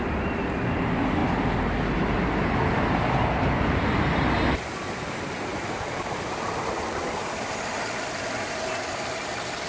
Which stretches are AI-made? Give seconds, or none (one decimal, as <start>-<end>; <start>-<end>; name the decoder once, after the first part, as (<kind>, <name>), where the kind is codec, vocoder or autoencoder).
none